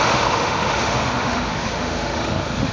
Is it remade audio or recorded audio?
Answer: remade